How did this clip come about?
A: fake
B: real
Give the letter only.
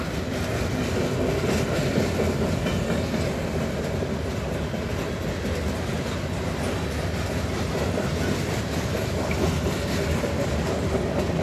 B